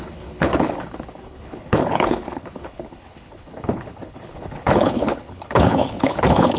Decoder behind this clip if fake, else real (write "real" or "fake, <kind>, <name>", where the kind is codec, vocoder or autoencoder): fake, codec, HILCodec